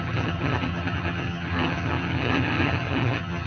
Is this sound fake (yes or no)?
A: yes